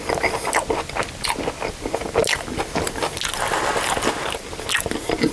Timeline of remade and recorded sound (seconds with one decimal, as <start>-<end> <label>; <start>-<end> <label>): 0.0-5.3 recorded